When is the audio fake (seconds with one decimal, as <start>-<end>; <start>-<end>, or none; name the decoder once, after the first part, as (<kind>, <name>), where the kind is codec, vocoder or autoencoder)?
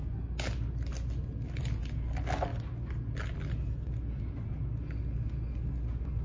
none